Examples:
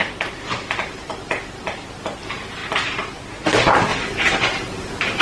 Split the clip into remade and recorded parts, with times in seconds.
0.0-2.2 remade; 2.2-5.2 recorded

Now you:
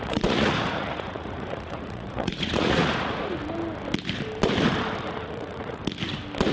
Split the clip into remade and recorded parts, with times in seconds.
0.0-3.4 remade; 3.4-5.0 recorded; 5.0-5.8 remade; 5.8-6.5 recorded

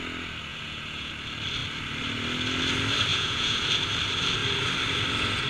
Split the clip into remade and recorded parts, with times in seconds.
0.0-0.5 recorded; 0.5-1.1 remade; 1.1-3.1 recorded; 3.1-3.7 remade; 3.7-5.5 recorded

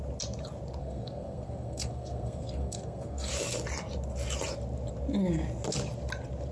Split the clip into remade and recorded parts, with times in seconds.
0.0-0.8 recorded; 0.8-3.3 remade; 3.3-6.5 recorded